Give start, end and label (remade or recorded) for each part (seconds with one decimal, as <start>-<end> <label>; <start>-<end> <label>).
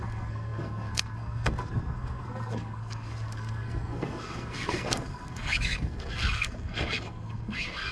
0.0-7.9 remade